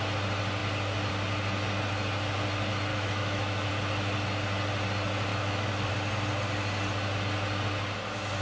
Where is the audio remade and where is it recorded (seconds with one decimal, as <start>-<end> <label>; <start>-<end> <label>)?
0.0-2.9 recorded; 2.9-3.7 remade; 3.7-5.3 recorded; 5.3-5.9 remade; 5.9-8.4 recorded